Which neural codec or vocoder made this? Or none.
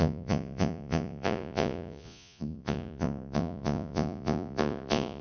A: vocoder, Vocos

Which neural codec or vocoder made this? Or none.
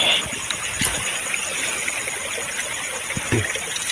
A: none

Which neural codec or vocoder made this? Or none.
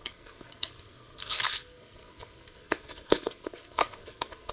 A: codec, SNAC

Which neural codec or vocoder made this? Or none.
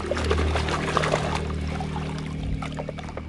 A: none